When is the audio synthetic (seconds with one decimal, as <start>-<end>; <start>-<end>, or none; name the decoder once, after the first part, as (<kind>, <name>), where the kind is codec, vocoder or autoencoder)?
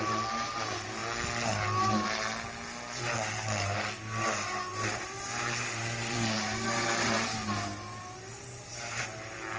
4.7-9.6 (vocoder, BigVGAN v2)